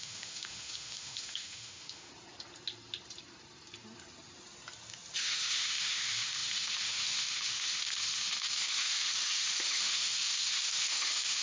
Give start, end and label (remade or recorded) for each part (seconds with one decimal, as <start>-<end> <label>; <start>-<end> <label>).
0.0-2.1 remade; 2.1-5.2 recorded; 5.2-11.4 remade